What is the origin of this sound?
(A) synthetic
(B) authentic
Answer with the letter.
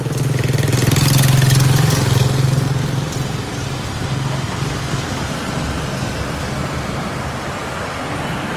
B